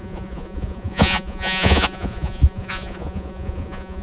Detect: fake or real fake